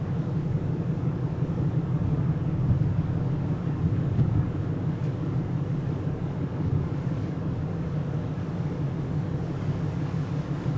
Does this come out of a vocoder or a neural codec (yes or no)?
yes